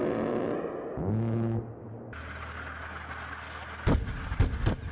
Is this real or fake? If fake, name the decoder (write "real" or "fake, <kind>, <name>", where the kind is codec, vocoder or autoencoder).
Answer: real